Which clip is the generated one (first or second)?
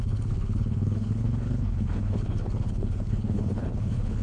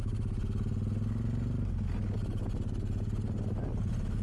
first